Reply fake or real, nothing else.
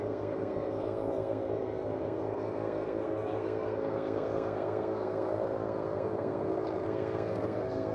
fake